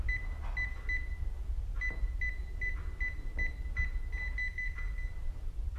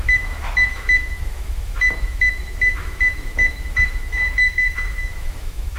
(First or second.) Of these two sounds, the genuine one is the first